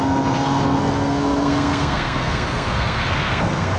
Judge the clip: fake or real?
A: fake